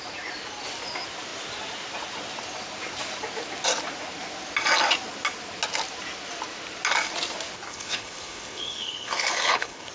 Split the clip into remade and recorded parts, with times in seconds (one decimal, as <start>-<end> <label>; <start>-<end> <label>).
0.0-7.7 recorded; 7.7-9.9 remade